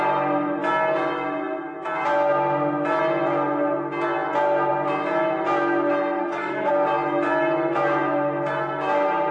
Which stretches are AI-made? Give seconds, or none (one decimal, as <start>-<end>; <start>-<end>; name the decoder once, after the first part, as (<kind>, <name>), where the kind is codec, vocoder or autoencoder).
6.2-6.7 (codec, SNAC)